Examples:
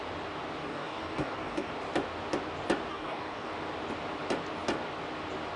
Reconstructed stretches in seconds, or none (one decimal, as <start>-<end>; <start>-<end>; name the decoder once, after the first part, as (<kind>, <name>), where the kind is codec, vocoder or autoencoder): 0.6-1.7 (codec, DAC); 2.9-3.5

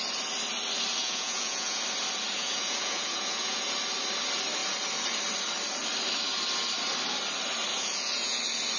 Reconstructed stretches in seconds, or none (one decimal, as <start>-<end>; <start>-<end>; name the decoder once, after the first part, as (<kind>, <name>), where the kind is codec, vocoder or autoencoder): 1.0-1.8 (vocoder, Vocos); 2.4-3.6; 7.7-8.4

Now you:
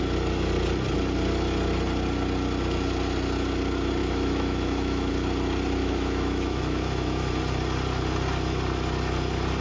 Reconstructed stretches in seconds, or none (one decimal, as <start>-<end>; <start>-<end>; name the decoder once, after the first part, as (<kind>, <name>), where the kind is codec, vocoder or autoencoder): 4.0-5.1 (autoencoder, DAC-VAE); 5.8-7.3

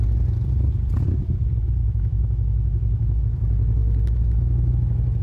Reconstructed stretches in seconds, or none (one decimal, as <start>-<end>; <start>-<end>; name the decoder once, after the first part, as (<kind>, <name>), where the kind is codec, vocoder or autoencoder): 1.8-3.2 (autoencoder, DAC-VAE)

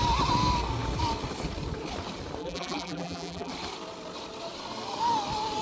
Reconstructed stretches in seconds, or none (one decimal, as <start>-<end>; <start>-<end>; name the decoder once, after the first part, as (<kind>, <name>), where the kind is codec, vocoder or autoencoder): 2.4-3.5 (vocoder, BigVGAN v2)

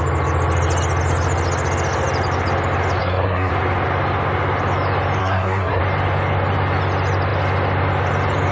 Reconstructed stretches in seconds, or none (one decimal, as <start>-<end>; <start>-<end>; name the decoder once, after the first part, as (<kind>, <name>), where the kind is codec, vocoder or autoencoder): 3.0-3.5 (codec, SNAC); 5.2-5.8